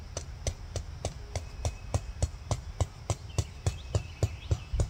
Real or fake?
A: real